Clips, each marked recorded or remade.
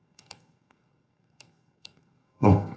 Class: remade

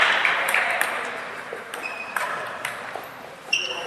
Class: remade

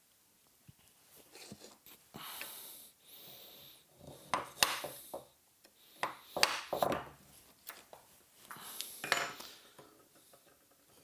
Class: recorded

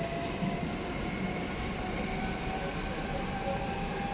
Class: recorded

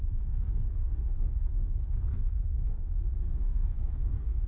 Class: remade